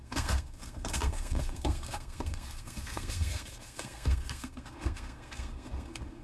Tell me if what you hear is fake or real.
fake